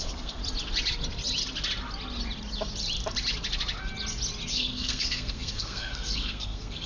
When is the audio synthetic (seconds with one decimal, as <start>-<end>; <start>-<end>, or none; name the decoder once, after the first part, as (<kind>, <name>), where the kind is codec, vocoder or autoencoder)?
0.0-0.4 (codec, SNAC); 4.5-6.9